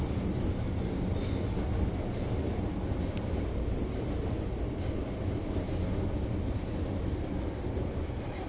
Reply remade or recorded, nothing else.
recorded